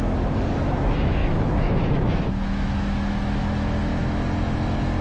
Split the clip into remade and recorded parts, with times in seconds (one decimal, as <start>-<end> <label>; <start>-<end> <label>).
0.0-3.9 remade; 3.9-5.0 recorded